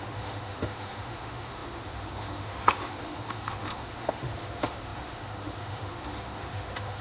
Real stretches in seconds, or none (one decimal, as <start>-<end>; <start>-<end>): none